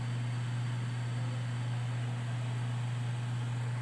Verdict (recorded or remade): recorded